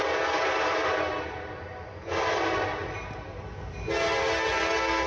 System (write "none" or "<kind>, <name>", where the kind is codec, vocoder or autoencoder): vocoder, BigVGAN v2